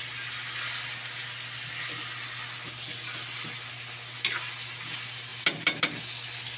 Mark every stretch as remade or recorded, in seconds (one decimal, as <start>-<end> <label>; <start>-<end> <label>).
0.0-6.6 recorded